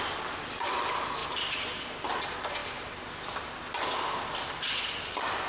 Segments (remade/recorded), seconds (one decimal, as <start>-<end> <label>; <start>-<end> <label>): 0.0-5.5 recorded